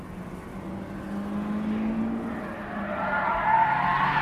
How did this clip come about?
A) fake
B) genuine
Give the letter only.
B